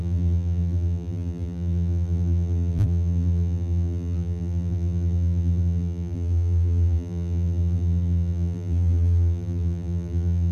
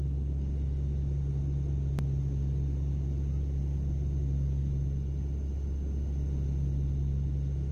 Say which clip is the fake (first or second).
first